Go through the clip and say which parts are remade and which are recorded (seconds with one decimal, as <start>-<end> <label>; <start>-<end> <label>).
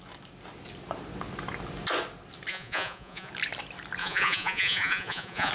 0.0-2.5 recorded; 2.5-3.3 remade; 3.3-4.0 recorded; 4.0-5.5 remade